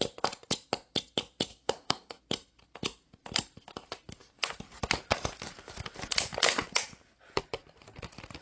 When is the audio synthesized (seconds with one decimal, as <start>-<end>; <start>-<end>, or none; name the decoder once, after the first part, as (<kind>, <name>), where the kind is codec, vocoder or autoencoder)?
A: 1.5-2.2 (codec, SNAC)